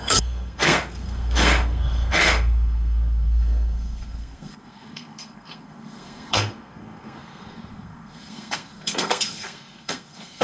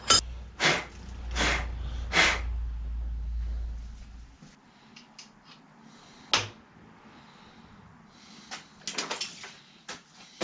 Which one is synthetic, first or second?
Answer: first